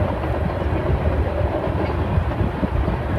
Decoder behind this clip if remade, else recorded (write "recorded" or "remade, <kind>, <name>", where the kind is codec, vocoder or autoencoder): recorded